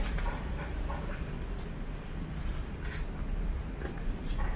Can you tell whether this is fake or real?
fake